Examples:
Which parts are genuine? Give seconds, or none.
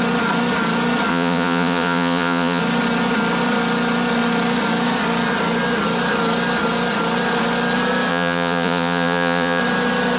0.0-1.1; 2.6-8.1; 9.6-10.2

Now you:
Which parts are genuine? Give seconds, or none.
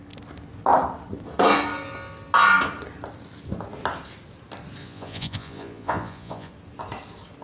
0.0-4.8; 6.5-7.4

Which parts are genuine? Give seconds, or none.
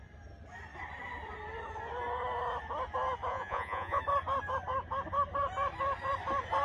0.0-3.3; 4.0-6.6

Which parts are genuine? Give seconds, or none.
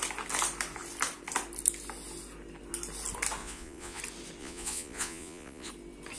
0.0-3.4; 4.0-4.4; 5.7-6.2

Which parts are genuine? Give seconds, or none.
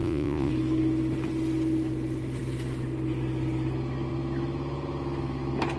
0.5-5.8